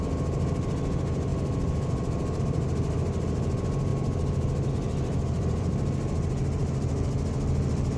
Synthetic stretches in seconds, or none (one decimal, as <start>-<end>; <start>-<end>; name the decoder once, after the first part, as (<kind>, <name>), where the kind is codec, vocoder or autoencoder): none